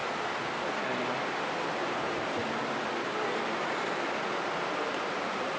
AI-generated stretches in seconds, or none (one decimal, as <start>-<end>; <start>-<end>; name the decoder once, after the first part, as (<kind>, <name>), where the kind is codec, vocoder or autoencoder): 1.4-2.4 (vocoder, BigVGAN v2); 5.0-5.6